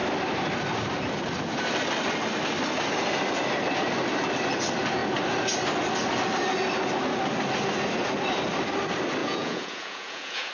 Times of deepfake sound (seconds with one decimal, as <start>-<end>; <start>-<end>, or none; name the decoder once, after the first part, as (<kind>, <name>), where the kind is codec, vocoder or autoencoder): 9.2-10.5 (vocoder, Vocos)